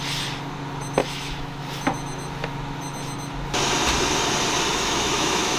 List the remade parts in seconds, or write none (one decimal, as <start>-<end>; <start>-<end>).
1.0-1.6; 4.7-5.6